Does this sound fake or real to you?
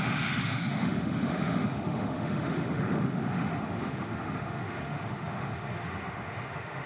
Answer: fake